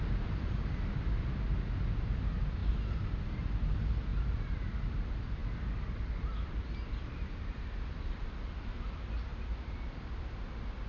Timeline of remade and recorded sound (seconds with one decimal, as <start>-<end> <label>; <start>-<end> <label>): 0.0-10.9 recorded